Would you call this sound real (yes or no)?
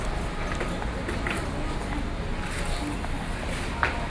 yes